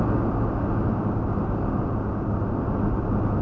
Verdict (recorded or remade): recorded